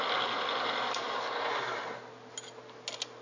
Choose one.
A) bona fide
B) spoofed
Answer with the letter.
A